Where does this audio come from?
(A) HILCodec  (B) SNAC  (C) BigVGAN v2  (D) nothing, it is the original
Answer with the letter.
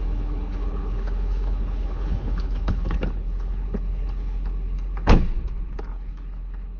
A